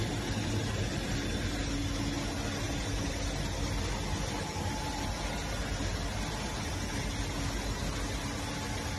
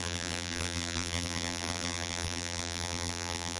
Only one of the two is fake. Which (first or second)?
second